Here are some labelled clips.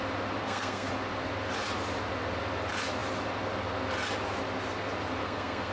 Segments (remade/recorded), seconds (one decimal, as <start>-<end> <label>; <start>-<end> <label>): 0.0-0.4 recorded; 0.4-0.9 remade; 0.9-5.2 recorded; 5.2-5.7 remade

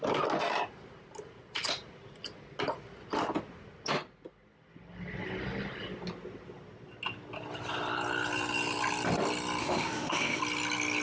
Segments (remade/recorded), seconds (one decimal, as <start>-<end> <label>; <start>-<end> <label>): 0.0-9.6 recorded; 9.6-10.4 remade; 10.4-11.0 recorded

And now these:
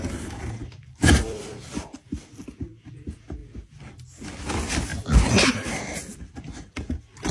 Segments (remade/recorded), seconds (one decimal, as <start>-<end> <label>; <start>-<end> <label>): 0.0-0.6 recorded; 0.6-2.3 remade; 2.3-4.9 recorded; 4.9-5.5 remade; 5.5-7.3 recorded

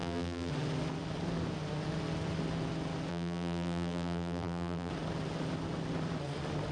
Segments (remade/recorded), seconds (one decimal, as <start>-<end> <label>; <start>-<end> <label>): 0.0-0.5 remade; 0.5-3.1 recorded; 3.1-4.9 remade; 4.9-6.7 recorded